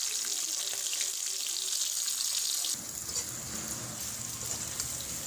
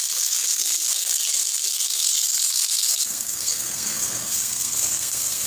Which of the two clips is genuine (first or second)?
first